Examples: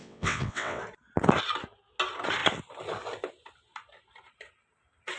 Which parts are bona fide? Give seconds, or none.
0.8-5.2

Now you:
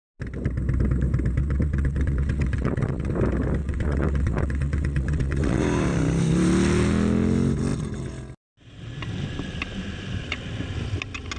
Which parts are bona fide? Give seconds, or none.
0.0-1.4; 3.1-3.6; 5.6-11.4

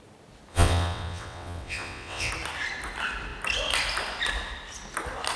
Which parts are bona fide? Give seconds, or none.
0.0-0.5; 2.3-5.4